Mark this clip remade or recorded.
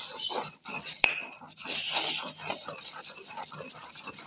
remade